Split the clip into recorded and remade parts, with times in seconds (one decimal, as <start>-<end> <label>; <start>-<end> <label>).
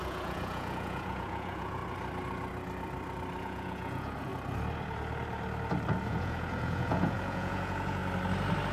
0.0-1.8 remade; 1.8-3.4 recorded; 3.4-4.3 remade; 4.3-6.1 recorded; 6.1-8.0 remade; 8.0-8.7 recorded